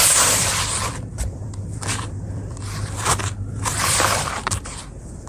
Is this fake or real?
fake